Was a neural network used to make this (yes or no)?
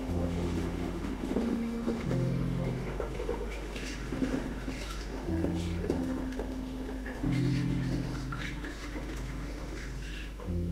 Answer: yes